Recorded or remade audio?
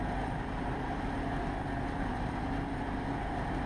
recorded